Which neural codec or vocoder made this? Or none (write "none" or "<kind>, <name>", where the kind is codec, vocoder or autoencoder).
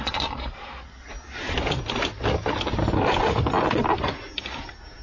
none